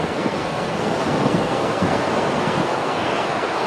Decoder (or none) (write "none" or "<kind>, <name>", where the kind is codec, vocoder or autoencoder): codec, SNAC